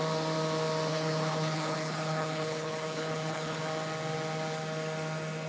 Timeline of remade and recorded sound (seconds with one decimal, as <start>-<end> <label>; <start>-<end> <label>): 0.0-0.9 recorded; 0.9-3.6 remade; 3.6-5.5 recorded